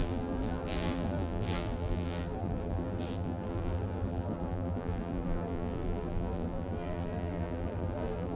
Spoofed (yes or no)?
yes